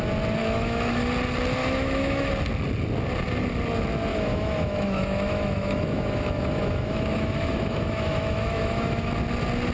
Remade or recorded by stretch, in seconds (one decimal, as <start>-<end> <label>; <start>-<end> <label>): 0.0-0.4 recorded; 0.4-1.0 remade; 1.0-1.6 recorded; 1.6-2.3 remade; 2.3-4.1 recorded; 4.1-9.1 remade; 9.1-9.7 recorded